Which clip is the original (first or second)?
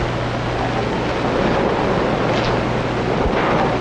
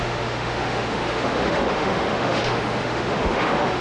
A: first